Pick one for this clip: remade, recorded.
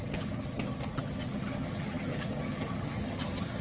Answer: remade